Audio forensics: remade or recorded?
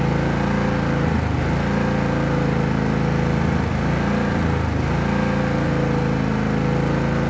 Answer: recorded